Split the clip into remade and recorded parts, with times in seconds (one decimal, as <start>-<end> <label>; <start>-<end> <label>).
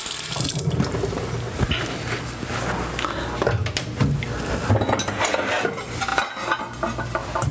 0.0-7.5 recorded